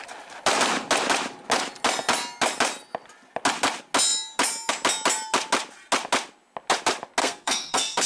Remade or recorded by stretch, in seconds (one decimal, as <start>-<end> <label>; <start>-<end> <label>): 0.0-7.2 recorded; 7.2-8.1 remade